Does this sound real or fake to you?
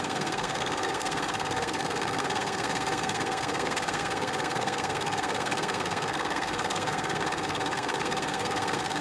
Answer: fake